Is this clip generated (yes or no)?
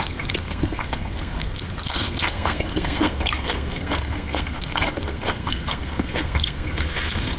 yes